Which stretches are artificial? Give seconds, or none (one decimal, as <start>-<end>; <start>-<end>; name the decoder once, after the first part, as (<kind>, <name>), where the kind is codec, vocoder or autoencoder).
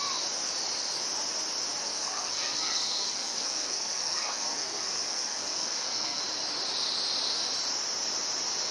1.8-6.2 (codec, SNAC)